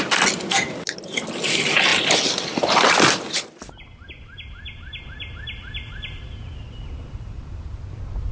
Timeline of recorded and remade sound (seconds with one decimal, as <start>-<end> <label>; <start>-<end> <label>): 0.0-8.3 recorded